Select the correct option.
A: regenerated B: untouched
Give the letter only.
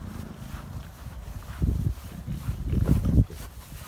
B